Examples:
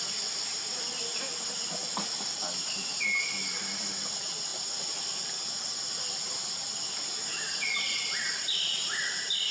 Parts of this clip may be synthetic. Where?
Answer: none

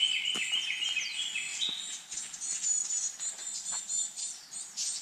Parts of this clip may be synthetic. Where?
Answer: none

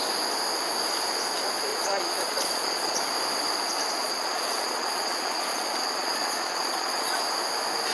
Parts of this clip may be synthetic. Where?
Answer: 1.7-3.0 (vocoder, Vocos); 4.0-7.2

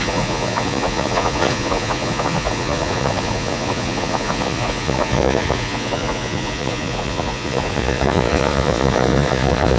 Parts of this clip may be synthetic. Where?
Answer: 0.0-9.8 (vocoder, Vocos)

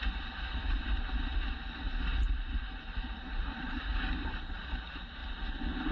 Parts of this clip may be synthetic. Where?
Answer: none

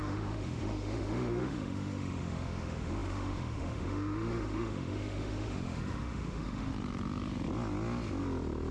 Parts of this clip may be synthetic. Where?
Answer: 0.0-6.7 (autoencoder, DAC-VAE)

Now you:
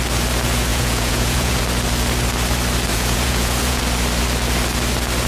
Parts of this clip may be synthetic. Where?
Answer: 0.7-1.6 (vocoder, Vocos); 2.9-3.8

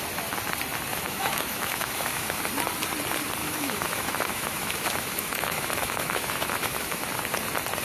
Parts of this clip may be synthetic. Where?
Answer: 0.9-2.4 (autoencoder, DAC-VAE); 3.4-7.1